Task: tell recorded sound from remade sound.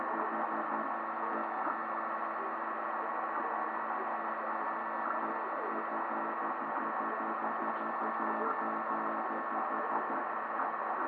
recorded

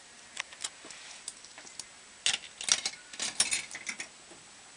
recorded